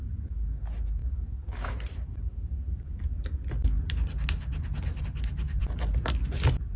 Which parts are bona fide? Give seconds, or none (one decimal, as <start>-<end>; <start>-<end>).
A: 0.0-6.8